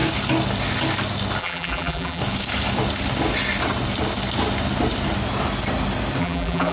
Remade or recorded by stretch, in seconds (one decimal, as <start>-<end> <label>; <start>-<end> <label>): 0.0-1.4 recorded; 1.4-2.2 remade; 2.2-6.2 recorded; 6.2-6.7 remade